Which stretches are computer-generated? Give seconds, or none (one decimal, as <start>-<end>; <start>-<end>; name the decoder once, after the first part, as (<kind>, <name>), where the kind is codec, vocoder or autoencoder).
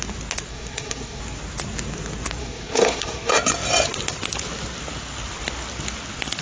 0.5-1.2 (codec, SNAC); 2.4-3.3